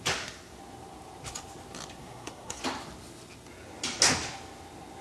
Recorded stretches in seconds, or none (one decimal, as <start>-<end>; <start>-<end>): 0.0-2.0; 2.6-5.0